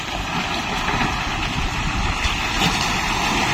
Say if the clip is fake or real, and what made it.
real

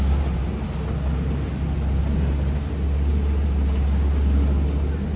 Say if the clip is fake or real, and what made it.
real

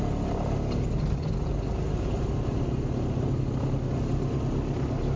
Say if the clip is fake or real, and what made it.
real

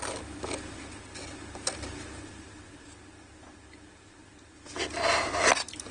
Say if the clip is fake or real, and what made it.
real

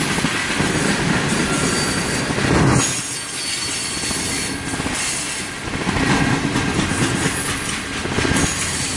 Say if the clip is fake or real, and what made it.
real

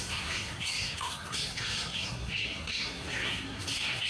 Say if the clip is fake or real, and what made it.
fake, codec, SNAC